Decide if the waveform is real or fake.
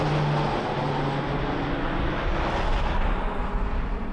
real